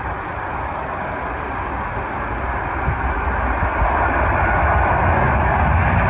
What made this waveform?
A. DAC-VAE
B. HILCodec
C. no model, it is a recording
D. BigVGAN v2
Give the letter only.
C